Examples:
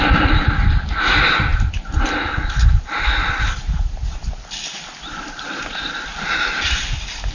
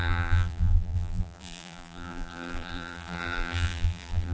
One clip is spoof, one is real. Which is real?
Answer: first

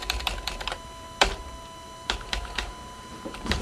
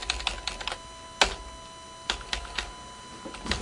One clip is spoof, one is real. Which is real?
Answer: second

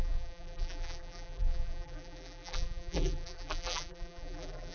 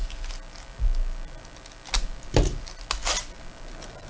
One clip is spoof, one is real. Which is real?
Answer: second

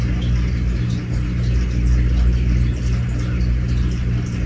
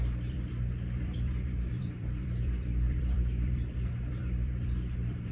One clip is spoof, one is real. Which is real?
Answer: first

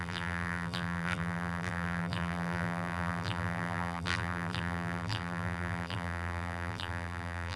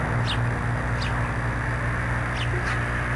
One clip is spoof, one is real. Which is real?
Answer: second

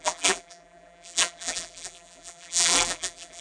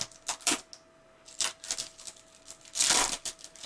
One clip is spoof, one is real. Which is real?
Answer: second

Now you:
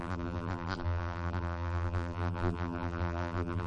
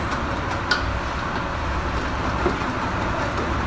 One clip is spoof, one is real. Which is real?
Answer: second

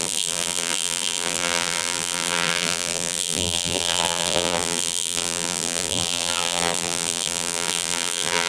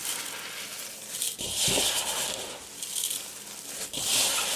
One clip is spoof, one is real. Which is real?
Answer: second